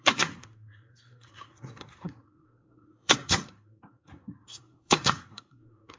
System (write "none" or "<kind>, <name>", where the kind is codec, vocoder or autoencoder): codec, SNAC